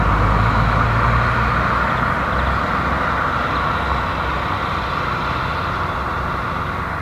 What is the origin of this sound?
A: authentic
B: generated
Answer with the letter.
A